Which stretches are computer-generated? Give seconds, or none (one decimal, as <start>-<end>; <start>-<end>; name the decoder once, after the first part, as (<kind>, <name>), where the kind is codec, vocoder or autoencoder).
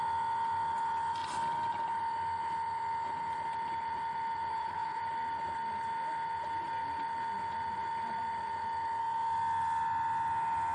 4.5-5.0 (codec, HILCodec)